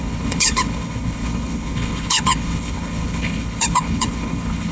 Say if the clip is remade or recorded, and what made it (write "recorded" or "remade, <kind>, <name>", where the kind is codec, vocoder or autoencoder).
remade, codec, HILCodec